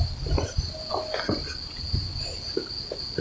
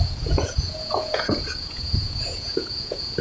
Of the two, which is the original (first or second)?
first